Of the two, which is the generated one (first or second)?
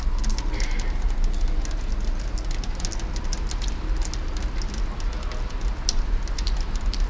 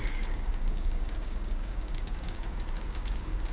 second